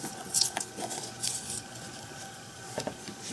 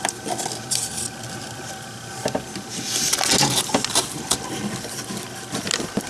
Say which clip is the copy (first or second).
first